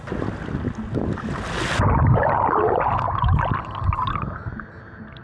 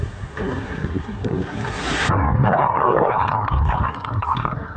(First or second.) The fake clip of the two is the second